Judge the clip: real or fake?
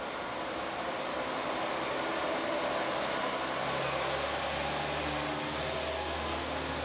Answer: real